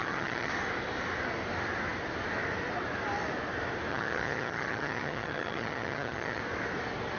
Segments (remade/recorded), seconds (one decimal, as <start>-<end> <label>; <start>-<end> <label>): 0.0-0.5 remade; 0.5-3.9 recorded; 3.9-6.4 remade; 6.4-7.2 recorded